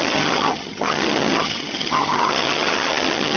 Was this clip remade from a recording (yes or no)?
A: yes